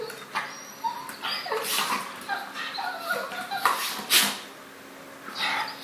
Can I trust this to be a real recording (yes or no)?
yes